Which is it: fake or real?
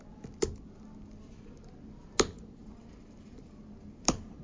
real